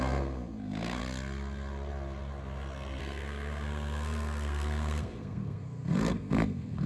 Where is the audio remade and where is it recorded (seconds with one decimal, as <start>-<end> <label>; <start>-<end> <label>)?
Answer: 0.0-1.0 remade; 1.0-3.0 recorded; 3.0-6.9 remade